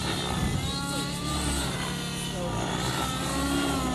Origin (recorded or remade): recorded